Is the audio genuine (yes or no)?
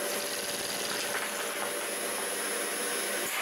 yes